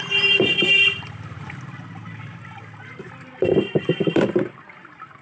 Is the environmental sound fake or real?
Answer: fake